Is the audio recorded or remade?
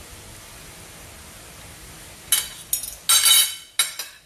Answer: recorded